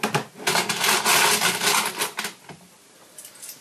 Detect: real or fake real